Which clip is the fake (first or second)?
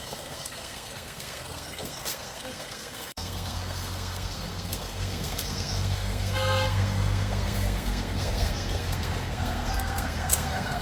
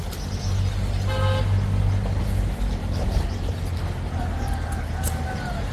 first